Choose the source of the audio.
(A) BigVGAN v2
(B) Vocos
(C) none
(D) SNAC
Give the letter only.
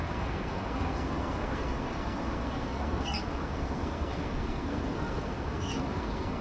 D